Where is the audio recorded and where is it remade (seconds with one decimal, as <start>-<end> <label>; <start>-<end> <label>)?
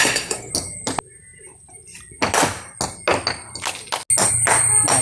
0.0-0.5 remade; 0.5-5.0 recorded